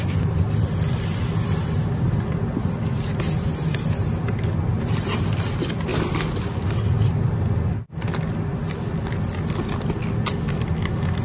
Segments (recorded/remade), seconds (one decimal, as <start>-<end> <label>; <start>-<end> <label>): 0.0-11.2 recorded